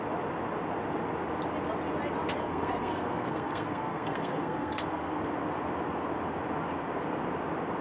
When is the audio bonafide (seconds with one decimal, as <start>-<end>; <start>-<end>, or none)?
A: 0.0-2.4; 5.2-7.8